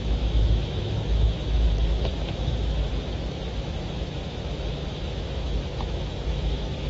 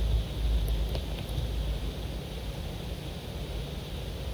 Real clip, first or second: second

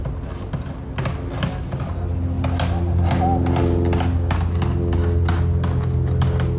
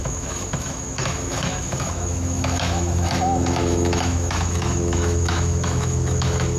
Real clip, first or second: first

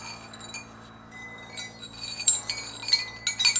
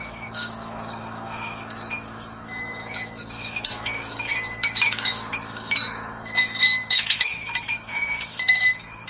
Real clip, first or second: first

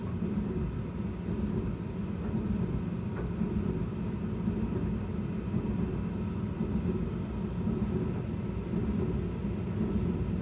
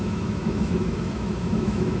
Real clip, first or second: first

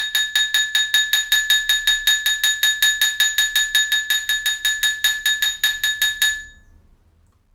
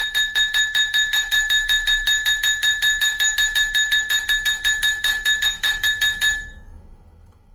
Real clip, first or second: first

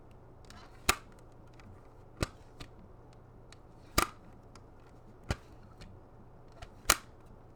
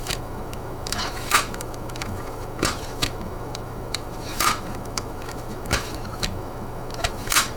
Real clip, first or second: first